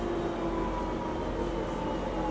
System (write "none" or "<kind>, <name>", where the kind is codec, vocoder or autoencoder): none